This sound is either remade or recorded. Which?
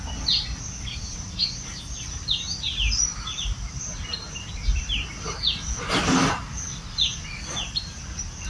recorded